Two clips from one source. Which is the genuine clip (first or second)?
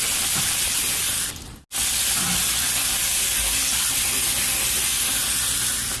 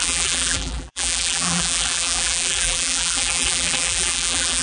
first